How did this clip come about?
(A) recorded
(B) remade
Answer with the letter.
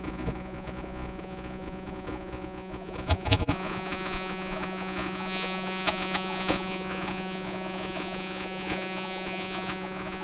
B